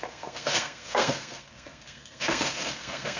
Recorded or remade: remade